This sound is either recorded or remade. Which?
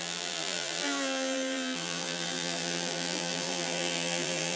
remade